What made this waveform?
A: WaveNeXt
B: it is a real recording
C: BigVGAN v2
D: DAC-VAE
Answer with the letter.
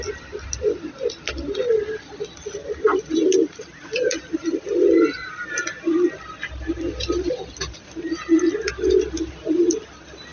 B